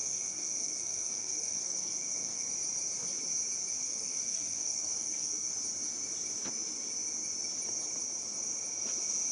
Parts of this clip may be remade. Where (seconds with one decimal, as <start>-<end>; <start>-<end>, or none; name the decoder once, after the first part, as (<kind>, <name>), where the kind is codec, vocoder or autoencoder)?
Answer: 0.0-2.5 (codec, SNAC); 3.8-5.5

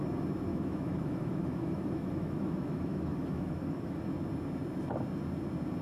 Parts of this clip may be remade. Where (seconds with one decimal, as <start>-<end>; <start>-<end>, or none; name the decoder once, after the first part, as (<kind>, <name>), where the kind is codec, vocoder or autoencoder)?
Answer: 0.5-4.0 (autoencoder, DAC-VAE)